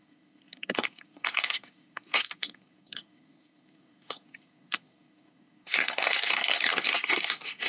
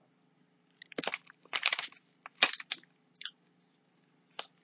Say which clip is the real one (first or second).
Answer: second